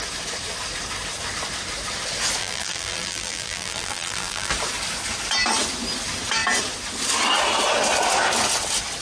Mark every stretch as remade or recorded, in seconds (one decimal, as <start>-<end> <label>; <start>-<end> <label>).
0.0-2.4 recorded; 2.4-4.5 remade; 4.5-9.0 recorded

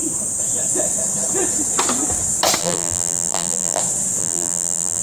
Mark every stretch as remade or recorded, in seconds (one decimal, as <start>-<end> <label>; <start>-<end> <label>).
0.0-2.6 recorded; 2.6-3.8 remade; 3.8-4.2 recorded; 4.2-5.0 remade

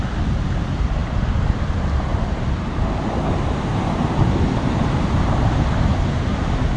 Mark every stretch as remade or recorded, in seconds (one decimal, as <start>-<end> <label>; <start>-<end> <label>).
0.0-2.1 recorded; 2.1-5.6 remade; 5.6-6.8 recorded

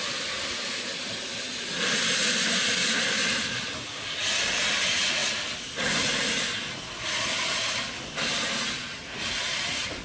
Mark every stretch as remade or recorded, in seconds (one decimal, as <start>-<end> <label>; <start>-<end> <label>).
0.0-10.0 recorded